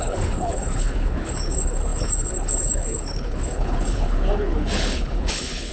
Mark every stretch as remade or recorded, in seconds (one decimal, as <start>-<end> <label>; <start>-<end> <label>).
0.0-5.7 remade